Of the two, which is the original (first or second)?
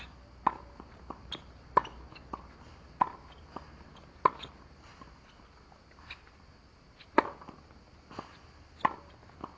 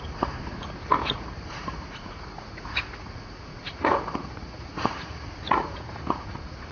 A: first